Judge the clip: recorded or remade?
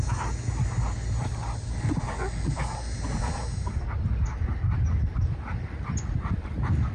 recorded